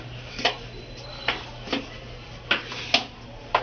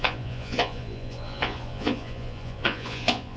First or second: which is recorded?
first